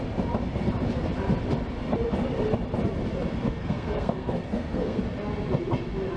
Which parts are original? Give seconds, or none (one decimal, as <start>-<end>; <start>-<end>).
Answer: 0.0-3.6; 5.0-6.2